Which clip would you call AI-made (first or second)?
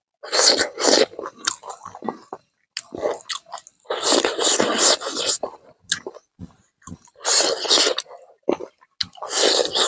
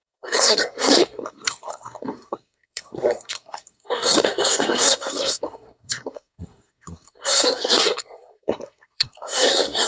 second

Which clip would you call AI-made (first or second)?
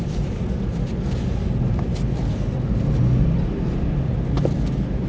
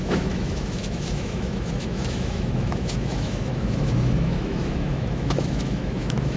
second